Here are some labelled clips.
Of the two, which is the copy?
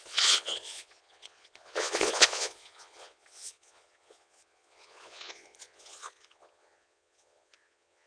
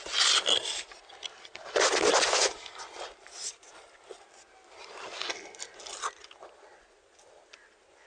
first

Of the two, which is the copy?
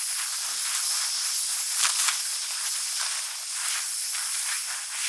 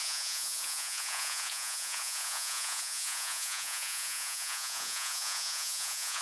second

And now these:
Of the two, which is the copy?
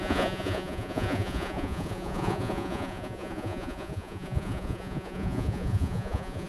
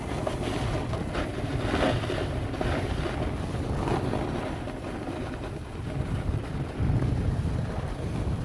first